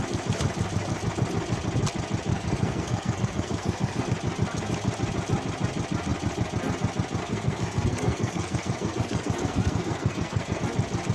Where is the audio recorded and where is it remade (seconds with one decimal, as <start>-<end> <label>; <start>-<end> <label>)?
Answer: 0.0-2.3 recorded; 2.3-4.0 remade; 4.0-7.2 recorded; 7.2-10.6 remade; 10.6-11.1 recorded